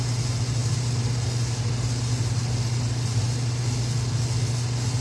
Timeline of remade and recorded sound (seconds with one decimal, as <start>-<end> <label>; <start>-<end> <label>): 0.0-5.0 recorded